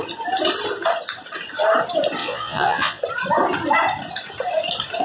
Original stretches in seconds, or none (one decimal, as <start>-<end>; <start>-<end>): 0.0-2.2; 3.0-5.0